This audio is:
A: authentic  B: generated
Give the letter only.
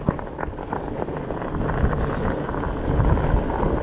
A